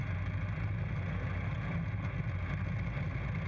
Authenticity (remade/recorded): recorded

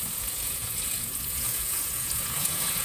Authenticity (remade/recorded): remade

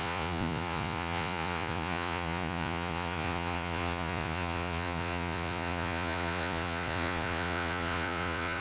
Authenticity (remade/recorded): remade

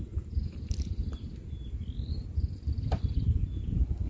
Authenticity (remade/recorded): recorded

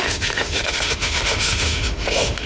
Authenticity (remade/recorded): remade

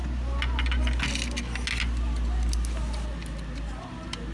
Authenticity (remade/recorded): recorded